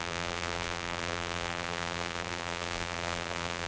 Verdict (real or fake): fake